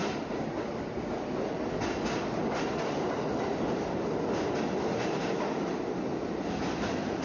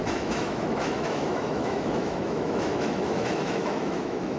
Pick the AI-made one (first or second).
second